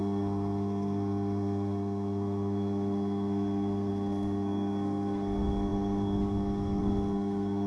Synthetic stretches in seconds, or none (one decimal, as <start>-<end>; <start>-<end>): 0.0-7.7